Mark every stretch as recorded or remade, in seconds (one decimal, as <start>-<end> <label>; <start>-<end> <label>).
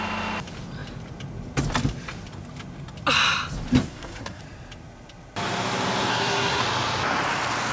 0.0-3.9 recorded; 3.9-4.4 remade; 4.4-6.1 recorded; 6.1-6.6 remade; 6.6-7.7 recorded